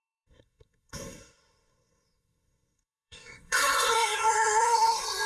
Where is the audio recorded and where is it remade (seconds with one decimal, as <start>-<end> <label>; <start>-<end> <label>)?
0.0-5.3 remade

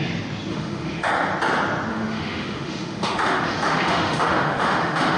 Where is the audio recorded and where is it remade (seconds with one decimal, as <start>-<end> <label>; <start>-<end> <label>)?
0.0-0.5 recorded; 0.5-1.1 remade; 1.1-1.9 recorded; 1.9-5.2 remade

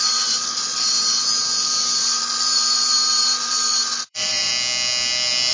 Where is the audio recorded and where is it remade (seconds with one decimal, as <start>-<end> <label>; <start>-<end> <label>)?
0.0-4.5 remade; 4.5-5.5 recorded

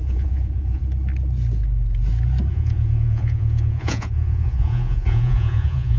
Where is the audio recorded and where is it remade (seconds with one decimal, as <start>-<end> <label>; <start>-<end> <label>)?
0.0-0.8 remade; 0.8-2.5 recorded; 2.5-6.0 remade

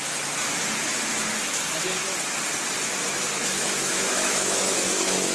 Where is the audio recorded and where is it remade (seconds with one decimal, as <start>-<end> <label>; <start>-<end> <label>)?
0.0-3.2 recorded; 3.2-5.3 remade

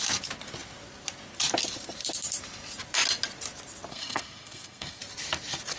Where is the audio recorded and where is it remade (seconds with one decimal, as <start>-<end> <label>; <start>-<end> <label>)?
0.0-3.9 recorded; 3.9-5.0 remade; 5.0-5.8 recorded

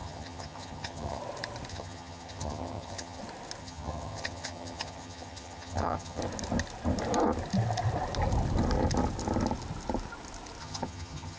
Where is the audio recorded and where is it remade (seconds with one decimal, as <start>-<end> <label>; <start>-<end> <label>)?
0.0-1.2 remade; 1.2-1.7 recorded; 1.7-3.2 remade; 3.2-3.6 recorded; 3.6-6.2 remade; 6.2-10.6 recorded; 10.6-11.4 remade

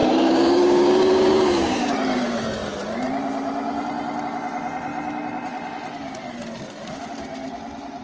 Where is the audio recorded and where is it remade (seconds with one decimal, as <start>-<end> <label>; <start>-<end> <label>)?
0.0-1.9 remade; 1.9-8.0 recorded